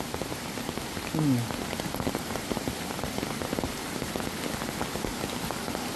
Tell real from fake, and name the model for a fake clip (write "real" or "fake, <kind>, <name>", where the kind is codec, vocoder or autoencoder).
real